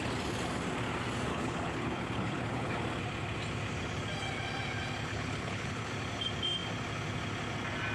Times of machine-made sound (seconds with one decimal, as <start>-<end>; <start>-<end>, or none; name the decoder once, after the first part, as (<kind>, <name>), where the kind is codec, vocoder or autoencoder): 1.3-2.8 (codec, HILCodec); 5.1-5.9